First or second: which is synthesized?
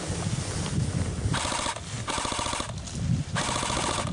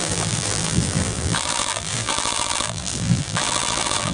second